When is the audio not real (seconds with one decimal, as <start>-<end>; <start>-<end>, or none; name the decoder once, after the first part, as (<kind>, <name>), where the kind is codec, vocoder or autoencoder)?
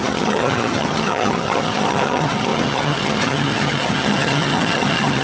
0.0-5.2 (vocoder, HiFi-GAN)